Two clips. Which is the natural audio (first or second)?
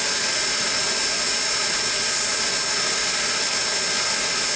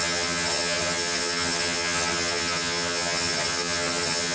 first